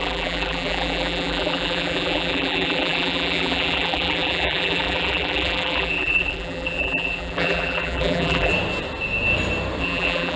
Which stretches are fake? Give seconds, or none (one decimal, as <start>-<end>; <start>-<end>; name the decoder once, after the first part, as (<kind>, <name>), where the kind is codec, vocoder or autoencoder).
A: 0.0-8.5 (vocoder, BigVGAN v2); 9.8-10.4